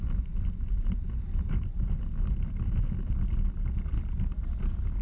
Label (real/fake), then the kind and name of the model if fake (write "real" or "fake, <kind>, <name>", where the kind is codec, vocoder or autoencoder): real